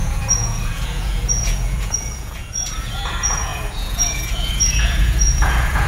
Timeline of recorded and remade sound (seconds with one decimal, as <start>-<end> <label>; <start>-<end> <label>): 0.0-5.9 remade